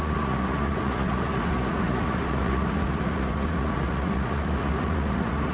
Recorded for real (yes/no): no